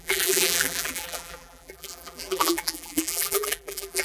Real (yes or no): no